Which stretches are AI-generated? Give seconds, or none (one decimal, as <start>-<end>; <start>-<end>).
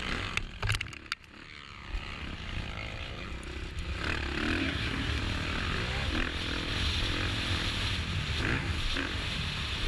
4.6-5.2